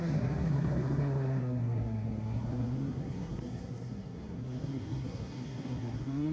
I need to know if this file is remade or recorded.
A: remade